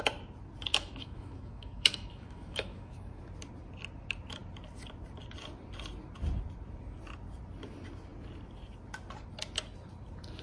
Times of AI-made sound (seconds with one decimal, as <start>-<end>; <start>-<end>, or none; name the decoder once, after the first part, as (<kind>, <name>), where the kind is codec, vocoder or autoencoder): 0.7-3.2 (autoencoder, DAC-VAE)